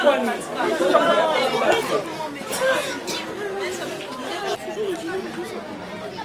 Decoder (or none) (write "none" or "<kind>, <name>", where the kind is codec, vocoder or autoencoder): none